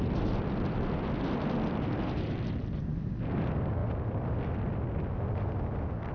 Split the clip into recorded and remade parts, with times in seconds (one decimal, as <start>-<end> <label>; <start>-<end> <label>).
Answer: 0.0-6.1 recorded